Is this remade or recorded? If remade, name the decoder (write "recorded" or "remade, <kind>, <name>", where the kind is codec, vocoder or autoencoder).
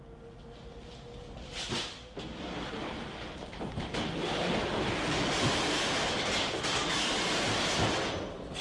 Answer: recorded